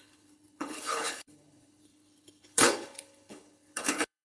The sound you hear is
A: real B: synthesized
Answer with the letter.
B